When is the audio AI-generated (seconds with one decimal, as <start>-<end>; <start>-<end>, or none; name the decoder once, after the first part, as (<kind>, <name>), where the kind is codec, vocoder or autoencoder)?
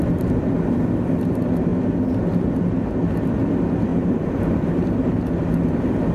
3.9-5.1 (vocoder, BigVGAN v2)